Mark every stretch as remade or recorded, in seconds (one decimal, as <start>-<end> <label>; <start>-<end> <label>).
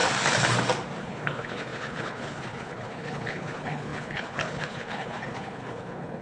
0.0-1.0 recorded; 1.0-6.2 remade